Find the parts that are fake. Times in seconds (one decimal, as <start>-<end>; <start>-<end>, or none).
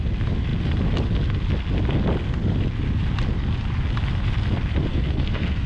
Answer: 4.9-5.7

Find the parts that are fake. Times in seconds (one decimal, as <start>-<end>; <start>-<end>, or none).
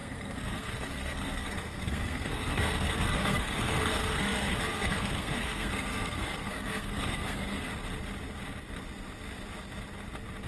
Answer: 0.0-7.7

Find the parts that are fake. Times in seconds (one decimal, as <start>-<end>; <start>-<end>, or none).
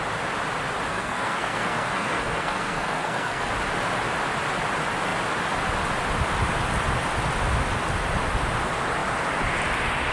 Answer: 0.9-3.5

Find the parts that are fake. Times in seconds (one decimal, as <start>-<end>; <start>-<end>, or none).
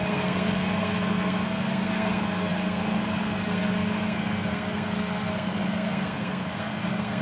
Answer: 0.0-7.2